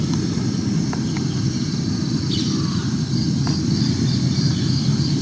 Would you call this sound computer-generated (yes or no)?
no